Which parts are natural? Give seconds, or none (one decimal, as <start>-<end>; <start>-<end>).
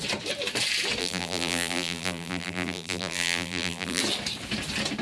0.0-1.0; 4.0-5.0